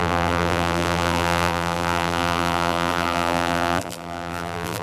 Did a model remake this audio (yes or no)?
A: yes